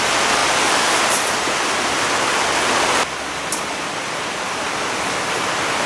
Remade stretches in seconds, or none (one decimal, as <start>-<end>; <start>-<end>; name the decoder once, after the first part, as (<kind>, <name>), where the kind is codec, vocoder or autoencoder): 0.4-3.9 (vocoder, BigVGAN v2)